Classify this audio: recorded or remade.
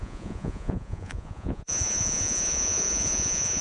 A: remade